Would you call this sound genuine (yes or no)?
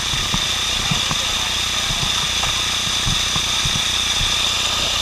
yes